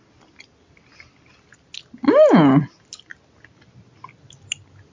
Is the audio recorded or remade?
recorded